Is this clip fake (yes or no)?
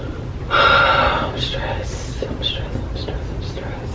no